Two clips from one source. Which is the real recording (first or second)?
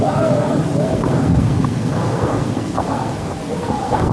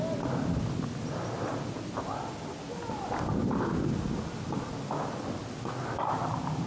second